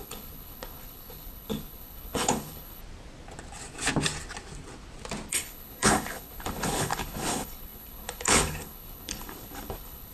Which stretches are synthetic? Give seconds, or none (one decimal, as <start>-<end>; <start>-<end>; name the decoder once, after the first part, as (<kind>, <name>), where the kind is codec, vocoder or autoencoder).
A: 0.0-2.8 (codec, HILCodec); 5.3-10.1